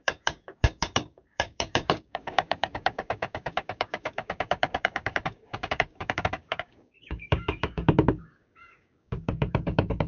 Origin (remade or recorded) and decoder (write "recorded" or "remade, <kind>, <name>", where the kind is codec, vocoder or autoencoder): remade, codec, DAC